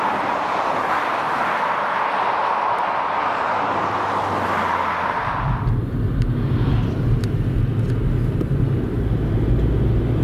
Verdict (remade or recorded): recorded